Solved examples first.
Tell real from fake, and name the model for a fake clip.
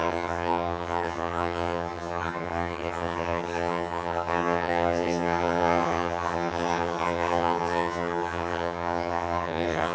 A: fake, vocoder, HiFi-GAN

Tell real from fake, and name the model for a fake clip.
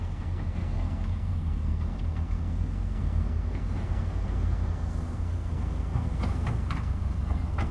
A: fake, codec, SNAC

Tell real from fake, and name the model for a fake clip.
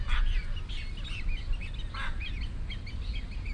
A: real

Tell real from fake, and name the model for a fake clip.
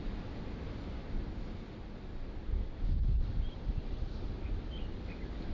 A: real